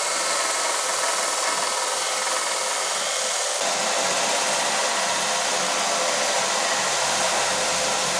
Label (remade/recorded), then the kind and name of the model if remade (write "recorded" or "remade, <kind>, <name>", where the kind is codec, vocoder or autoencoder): recorded